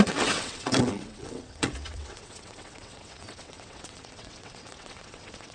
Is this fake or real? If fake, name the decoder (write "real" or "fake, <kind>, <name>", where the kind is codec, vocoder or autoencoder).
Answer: fake, vocoder, WaveNeXt